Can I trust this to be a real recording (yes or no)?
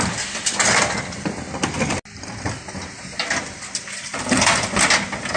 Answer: yes